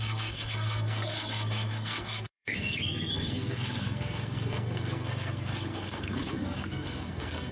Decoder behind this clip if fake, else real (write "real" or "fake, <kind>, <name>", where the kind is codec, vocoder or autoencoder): fake, codec, SNAC